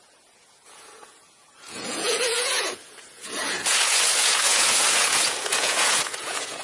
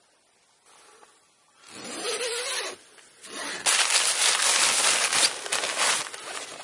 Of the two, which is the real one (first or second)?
second